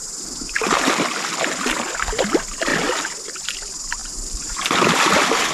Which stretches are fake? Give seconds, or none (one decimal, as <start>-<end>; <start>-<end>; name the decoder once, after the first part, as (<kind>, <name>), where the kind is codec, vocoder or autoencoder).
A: 0.0-0.9 (vocoder, BigVGAN v2); 4.0-5.1